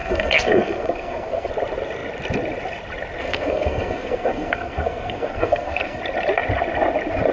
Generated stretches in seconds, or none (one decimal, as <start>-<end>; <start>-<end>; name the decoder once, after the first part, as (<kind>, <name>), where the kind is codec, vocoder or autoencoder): 0.0-1.5 (codec, SNAC); 3.2-6.0

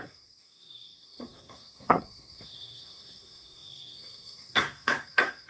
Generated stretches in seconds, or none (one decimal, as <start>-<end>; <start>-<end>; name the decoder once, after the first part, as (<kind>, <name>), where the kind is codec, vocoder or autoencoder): 0.0-5.5 (codec, SNAC)